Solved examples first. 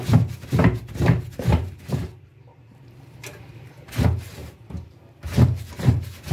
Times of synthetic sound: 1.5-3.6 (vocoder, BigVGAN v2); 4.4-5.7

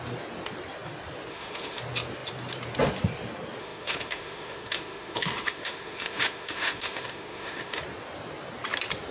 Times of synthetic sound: 1.3-1.8 (autoencoder, DAC-VAE); 3.6-7.8

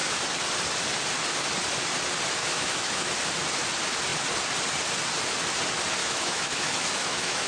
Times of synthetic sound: 2.4-3.1 (autoencoder, DAC-VAE); 6.0-7.5

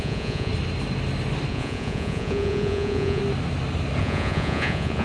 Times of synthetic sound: 0.0-0.5 (vocoder, Vocos); 1.5-3.2; 4.0-5.0

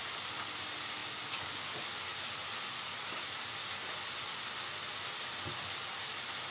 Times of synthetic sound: 0.0-1.0 (vocoder, BigVGAN v2); 1.6-2.1; 5.9-6.5

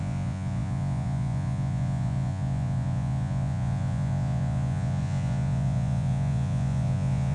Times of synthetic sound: 0.0-7.3 (vocoder, Vocos)

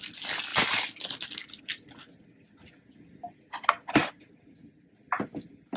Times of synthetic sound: 0.5-1.6 (vocoder, BigVGAN v2); 4.0-4.9